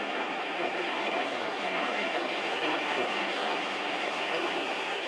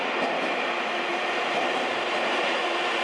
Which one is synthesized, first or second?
first